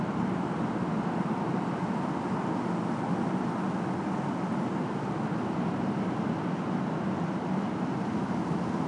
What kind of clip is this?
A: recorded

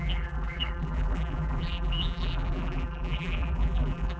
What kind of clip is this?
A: remade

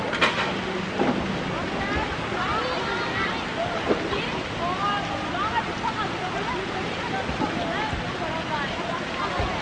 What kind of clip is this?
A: recorded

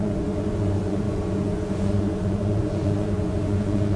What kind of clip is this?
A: remade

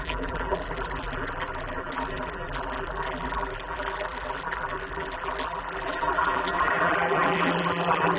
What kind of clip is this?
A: remade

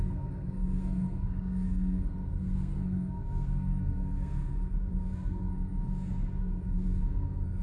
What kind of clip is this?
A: remade